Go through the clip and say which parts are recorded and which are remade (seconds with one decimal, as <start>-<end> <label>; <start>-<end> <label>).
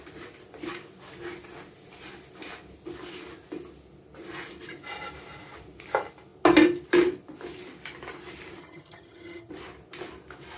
0.0-8.6 recorded; 8.6-9.5 remade; 9.5-10.6 recorded